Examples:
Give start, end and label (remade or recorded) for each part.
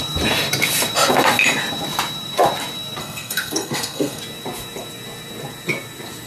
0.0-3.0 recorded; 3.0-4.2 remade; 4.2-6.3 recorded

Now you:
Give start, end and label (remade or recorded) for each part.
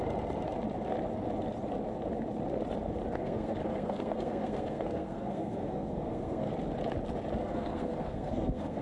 0.0-3.2 recorded; 3.2-6.5 remade; 6.5-7.4 recorded; 7.4-8.8 remade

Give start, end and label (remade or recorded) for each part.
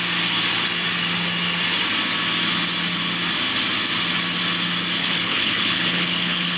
0.0-5.0 recorded; 5.0-6.6 remade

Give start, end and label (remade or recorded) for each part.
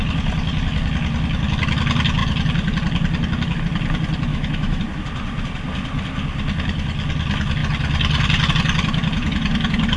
0.0-4.3 recorded; 4.3-4.8 remade; 4.8-10.0 recorded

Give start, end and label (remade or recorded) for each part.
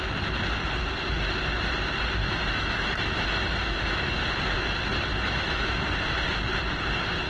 0.0-2.2 recorded; 2.2-4.2 remade; 4.2-5.1 recorded; 5.1-5.8 remade; 5.8-7.3 recorded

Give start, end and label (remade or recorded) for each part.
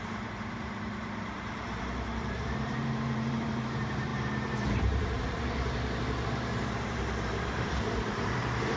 0.0-8.8 remade